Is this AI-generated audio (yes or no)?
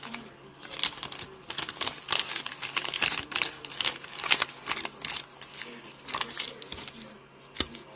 no